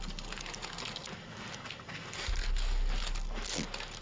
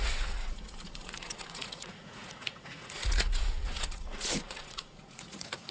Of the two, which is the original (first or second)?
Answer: first